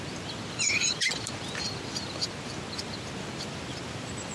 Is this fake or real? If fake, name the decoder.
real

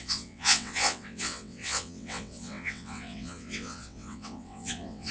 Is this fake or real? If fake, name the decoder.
fake, vocoder, WaveNeXt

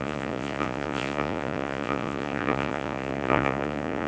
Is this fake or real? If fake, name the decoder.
fake, vocoder, Vocos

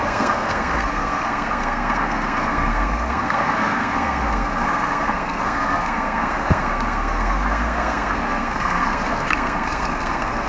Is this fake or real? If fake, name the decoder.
fake, codec, SNAC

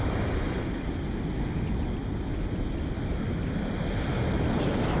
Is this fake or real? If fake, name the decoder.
real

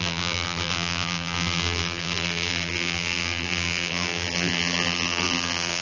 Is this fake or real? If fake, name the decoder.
fake, vocoder, BigVGAN v2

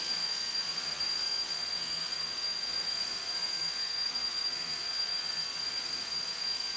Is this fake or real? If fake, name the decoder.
fake, codec, SNAC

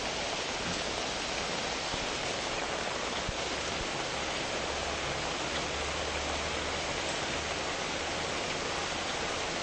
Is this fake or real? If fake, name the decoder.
real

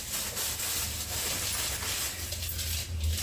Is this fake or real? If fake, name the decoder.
real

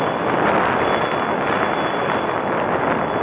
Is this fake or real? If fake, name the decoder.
real